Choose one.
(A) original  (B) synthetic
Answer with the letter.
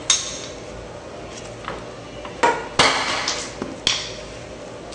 A